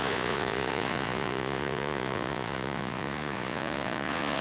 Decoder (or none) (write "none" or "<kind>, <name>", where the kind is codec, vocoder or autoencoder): vocoder, Vocos